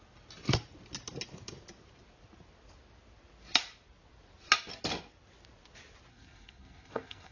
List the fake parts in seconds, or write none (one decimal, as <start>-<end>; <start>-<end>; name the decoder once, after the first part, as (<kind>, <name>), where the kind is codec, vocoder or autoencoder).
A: 6.1-7.3 (codec, SNAC)